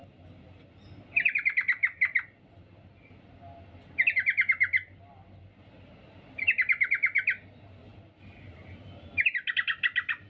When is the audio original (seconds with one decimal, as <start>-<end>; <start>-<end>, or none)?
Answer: 0.0-10.3